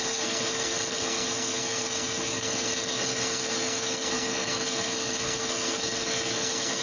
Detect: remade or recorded remade